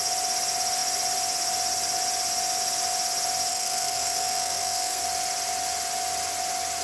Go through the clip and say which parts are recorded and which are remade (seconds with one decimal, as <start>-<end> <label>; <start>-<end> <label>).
0.0-3.5 recorded; 3.5-5.0 remade; 5.0-6.8 recorded

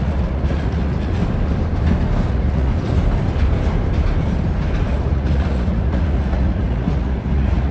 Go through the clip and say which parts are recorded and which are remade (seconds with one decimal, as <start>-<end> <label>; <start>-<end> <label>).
0.0-1.2 remade; 1.2-2.3 recorded; 2.3-2.7 remade; 2.7-4.9 recorded; 4.9-7.7 remade